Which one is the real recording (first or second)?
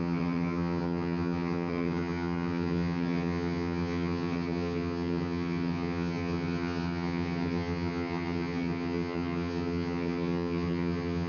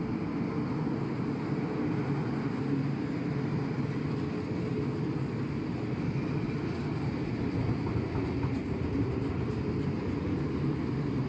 second